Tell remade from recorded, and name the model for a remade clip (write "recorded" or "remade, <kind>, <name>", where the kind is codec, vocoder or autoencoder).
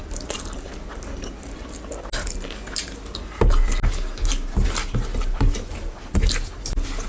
recorded